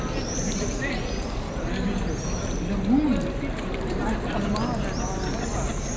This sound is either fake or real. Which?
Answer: real